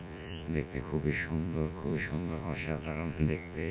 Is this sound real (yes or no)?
no